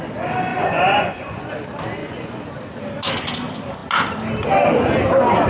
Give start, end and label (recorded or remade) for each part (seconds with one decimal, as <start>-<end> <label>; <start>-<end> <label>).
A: 0.0-0.5 recorded; 0.5-1.5 remade; 1.5-2.0 recorded; 2.0-2.5 remade; 2.5-5.5 recorded